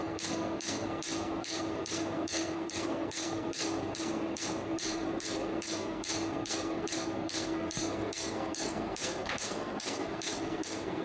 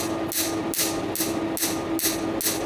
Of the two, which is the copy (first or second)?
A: first